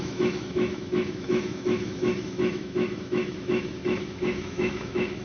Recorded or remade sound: remade